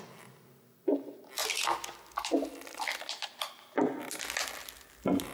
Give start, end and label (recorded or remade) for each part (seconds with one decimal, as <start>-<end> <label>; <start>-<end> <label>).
0.0-5.3 recorded